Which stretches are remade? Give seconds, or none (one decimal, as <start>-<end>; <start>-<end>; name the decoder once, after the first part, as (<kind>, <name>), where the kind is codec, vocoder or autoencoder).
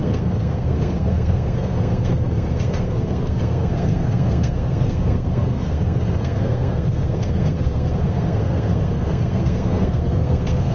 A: 0.0-10.7 (codec, SNAC)